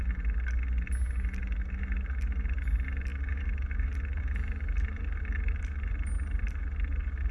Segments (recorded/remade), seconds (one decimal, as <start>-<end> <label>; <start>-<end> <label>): 0.0-7.3 recorded